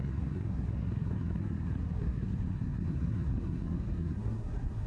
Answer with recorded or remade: remade